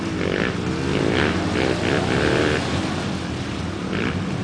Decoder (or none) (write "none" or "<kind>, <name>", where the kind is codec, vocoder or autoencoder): none